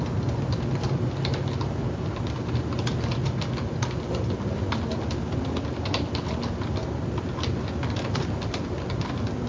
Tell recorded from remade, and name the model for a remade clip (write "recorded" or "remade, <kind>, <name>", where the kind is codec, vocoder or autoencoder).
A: recorded